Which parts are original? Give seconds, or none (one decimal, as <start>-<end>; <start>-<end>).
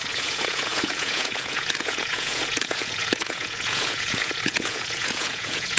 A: none